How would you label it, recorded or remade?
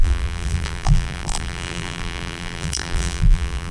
remade